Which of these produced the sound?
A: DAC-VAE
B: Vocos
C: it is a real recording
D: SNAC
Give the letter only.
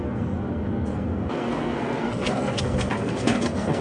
D